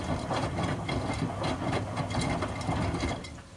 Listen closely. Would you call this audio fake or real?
real